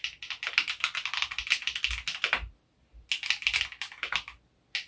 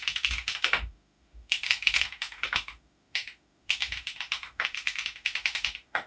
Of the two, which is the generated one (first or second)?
second